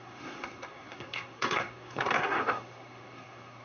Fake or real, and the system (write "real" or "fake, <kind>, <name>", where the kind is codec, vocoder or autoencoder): fake, codec, SNAC